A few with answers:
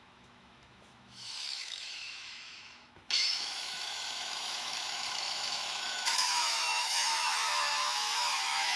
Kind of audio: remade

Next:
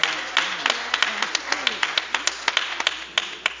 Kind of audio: recorded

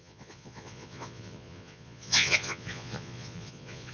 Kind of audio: remade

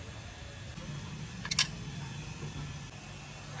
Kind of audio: recorded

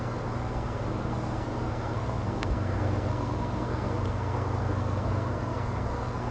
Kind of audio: remade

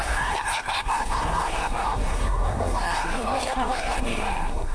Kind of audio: remade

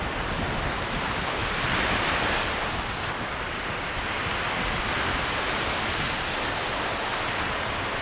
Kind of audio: recorded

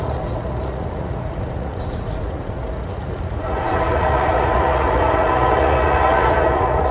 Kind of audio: remade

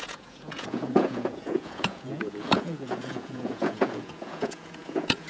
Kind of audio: remade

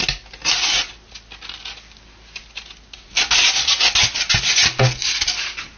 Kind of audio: recorded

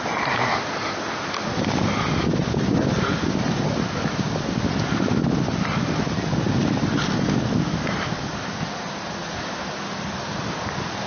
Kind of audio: recorded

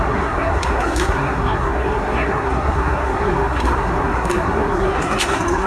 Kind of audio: remade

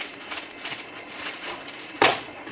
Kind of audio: remade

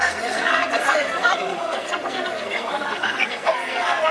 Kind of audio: remade